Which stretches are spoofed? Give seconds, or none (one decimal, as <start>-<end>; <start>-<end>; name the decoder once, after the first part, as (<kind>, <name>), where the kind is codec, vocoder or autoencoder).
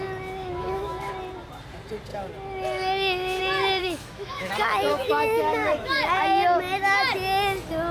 0.4-1.1 (autoencoder, DAC-VAE); 3.8-4.5; 4.9-6.2